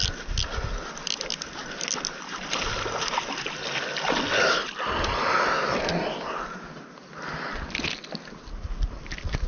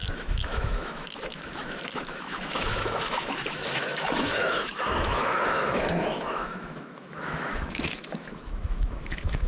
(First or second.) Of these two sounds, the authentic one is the first